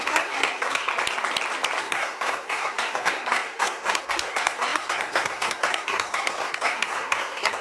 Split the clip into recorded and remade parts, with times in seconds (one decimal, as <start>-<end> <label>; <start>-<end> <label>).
0.0-0.9 remade; 0.9-1.8 recorded; 1.8-7.6 remade